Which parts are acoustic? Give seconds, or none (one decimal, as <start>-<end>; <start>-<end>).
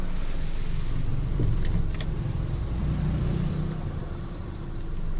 0.0-1.1; 1.8-2.8; 3.5-4.0; 4.7-5.2